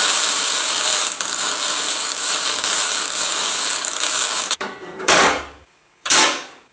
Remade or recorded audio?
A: remade